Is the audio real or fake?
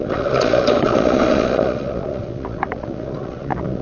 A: fake